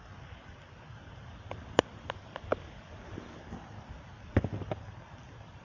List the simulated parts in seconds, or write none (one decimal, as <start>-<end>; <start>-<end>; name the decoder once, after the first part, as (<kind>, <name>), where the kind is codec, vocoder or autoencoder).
none